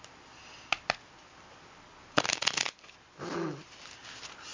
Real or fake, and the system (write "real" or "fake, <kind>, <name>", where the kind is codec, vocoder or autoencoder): real